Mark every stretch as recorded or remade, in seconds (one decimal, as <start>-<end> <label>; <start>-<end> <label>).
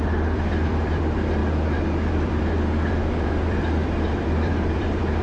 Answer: 0.0-1.4 remade; 1.4-2.1 recorded; 2.1-5.2 remade